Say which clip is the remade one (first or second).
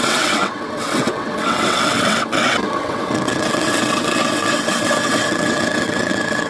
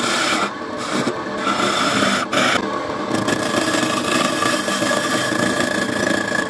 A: first